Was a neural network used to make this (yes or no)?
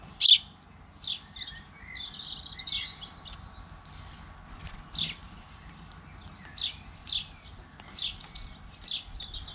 no